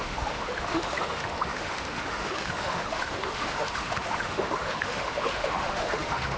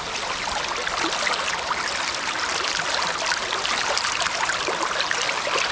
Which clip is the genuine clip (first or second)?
second